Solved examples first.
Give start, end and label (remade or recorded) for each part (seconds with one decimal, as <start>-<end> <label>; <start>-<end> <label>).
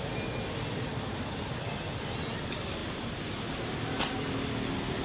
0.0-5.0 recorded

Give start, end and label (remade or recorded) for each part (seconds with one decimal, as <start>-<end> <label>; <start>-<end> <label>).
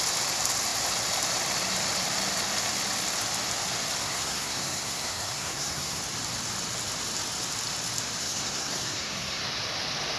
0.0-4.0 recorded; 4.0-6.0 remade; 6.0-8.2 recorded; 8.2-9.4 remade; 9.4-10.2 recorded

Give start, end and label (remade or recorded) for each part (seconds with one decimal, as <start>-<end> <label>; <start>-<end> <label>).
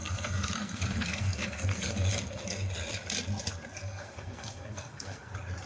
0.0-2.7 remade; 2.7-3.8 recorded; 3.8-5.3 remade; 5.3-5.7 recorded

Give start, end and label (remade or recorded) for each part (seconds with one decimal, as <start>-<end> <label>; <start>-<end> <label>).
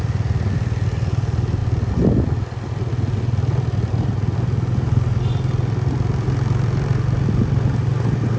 0.0-8.4 recorded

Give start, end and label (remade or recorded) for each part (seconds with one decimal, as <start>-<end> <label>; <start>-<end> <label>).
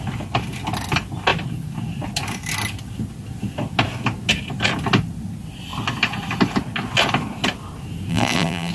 0.0-8.1 recorded; 8.1-8.7 remade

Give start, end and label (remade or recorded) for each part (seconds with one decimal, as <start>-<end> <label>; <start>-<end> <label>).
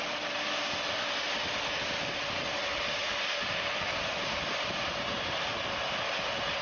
0.0-3.0 recorded; 3.0-4.7 remade; 4.7-6.6 recorded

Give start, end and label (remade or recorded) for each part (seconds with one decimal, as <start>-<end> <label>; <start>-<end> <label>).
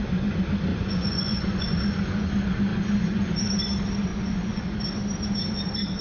0.0-0.7 recorded; 0.7-2.3 remade; 2.3-2.7 recorded; 2.7-3.6 remade; 3.6-4.1 recorded; 4.1-4.8 remade; 4.8-6.0 recorded